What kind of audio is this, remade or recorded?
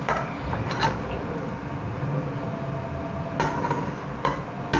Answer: recorded